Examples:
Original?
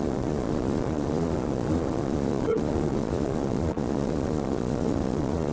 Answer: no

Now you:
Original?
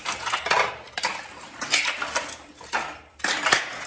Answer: yes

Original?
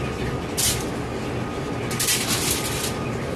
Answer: yes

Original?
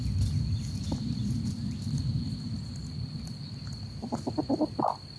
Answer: yes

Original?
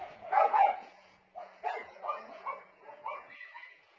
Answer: no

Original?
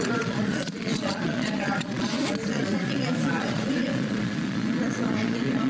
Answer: no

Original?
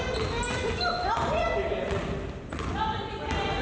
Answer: yes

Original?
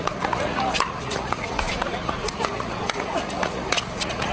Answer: no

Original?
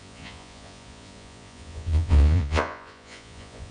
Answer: no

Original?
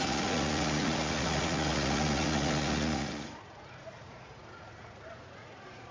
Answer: no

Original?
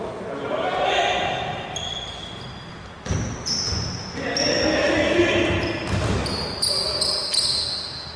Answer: yes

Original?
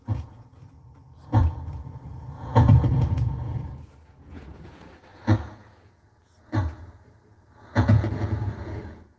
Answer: no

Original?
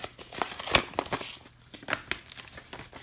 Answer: yes